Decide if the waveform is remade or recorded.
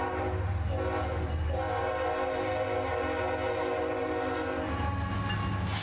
recorded